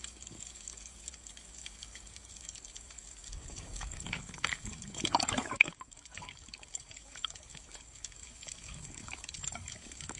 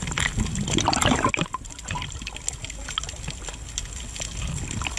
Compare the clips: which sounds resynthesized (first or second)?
first